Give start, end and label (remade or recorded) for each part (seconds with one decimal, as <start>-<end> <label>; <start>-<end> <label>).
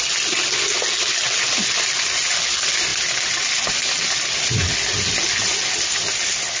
0.0-6.6 recorded